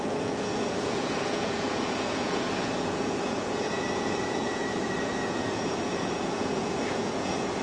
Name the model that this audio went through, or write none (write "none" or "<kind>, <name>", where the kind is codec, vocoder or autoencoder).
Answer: vocoder, Vocos